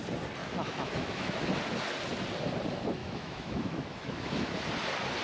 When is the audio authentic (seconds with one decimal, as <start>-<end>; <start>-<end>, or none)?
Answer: 0.0-0.4; 1.4-3.0; 4.5-5.2